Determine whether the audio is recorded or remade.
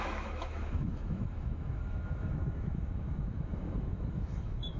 remade